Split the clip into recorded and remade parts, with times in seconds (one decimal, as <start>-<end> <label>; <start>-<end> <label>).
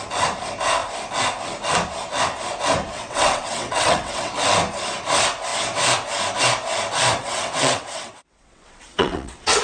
0.0-2.9 recorded; 2.9-4.3 remade; 4.3-7.2 recorded; 7.2-9.6 remade